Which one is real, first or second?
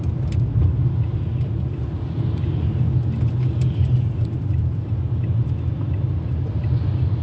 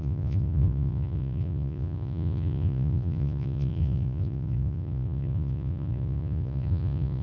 first